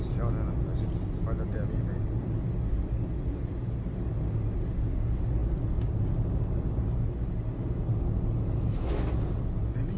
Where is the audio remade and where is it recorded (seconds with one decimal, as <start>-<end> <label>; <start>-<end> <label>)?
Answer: 0.0-10.0 recorded